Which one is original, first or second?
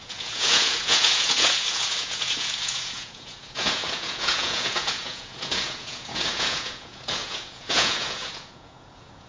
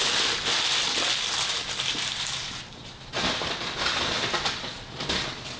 second